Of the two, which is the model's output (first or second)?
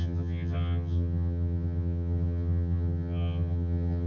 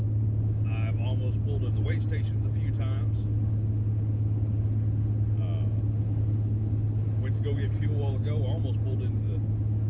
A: first